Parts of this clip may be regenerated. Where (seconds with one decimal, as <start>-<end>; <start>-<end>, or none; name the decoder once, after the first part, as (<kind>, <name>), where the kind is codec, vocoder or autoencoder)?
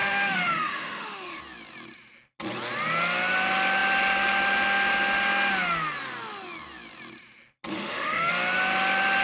0.0-1.4 (autoencoder, DAC-VAE); 7.7-8.3